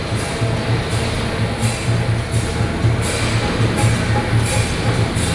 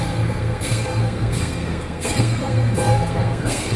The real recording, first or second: first